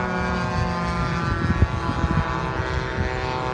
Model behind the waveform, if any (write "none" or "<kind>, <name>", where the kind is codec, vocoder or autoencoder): none